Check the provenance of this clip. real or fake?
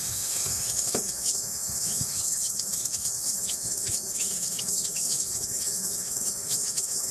fake